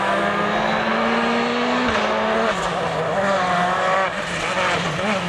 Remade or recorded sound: recorded